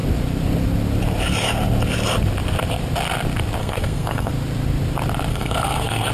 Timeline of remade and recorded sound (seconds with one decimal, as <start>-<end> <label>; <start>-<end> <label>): 0.0-3.6 recorded; 3.6-4.3 remade; 4.3-5.3 recorded; 5.3-6.1 remade